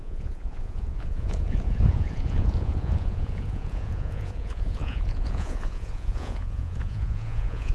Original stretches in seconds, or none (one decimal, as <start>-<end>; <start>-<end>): none